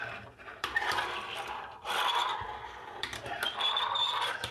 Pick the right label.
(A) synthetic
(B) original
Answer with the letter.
A